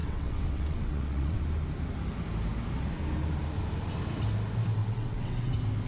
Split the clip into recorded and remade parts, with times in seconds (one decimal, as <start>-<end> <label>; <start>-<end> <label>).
0.0-1.4 remade; 1.4-4.8 recorded; 4.8-5.5 remade; 5.5-5.9 recorded